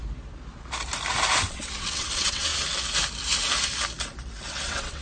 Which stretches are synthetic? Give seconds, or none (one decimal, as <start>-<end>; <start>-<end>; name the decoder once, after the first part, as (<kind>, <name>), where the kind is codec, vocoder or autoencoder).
1.5-2.5 (vocoder, WaveNeXt); 4.5-5.0